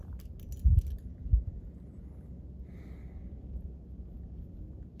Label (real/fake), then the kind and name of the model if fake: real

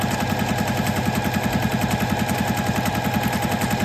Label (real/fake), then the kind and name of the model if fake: real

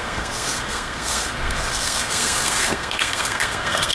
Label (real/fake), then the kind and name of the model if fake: fake, codec, SNAC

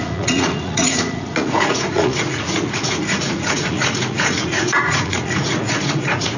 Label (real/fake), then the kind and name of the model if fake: fake, vocoder, Vocos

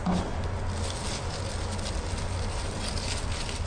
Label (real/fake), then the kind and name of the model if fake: real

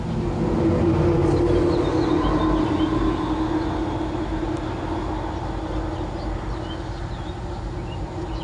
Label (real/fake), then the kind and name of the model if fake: real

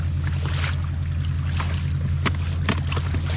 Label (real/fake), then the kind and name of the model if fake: real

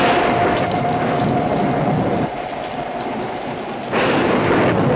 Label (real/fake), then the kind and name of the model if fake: real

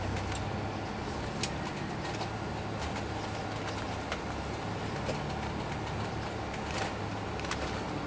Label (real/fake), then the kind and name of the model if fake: real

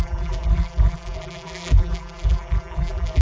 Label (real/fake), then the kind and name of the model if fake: fake, vocoder, BigVGAN v2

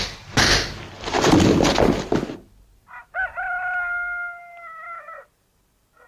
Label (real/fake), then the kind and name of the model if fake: real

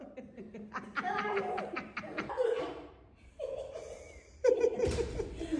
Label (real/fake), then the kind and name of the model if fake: fake, vocoder, BigVGAN v2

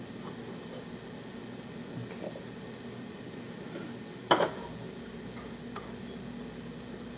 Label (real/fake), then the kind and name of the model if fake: real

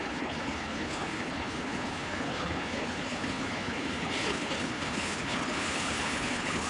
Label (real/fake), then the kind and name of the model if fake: fake, codec, HILCodec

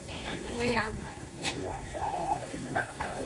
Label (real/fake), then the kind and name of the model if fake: fake, codec, SNAC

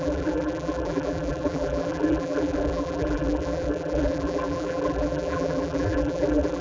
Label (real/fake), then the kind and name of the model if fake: fake, vocoder, BigVGAN v2